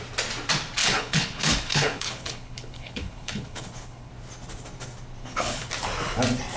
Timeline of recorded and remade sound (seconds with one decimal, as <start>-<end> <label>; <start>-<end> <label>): 0.0-0.8 recorded; 0.8-4.1 remade; 4.1-5.2 recorded; 5.2-5.7 remade; 5.7-6.6 recorded